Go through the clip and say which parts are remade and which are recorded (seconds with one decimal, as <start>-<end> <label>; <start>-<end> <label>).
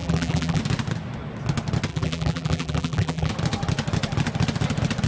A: 0.0-0.6 remade; 0.6-1.9 recorded; 1.9-3.3 remade; 3.3-5.1 recorded